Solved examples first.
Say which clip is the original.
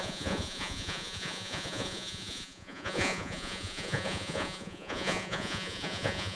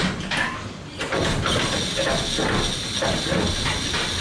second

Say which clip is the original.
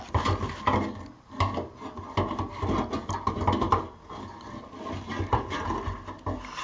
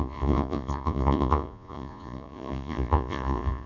first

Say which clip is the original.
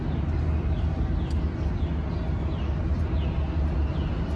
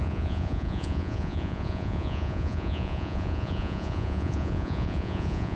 first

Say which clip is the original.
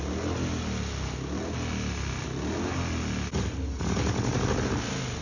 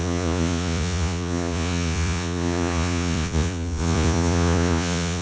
first